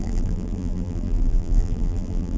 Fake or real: fake